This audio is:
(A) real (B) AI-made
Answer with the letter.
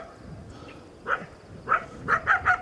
A